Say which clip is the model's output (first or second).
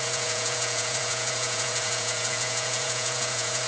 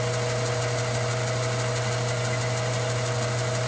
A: first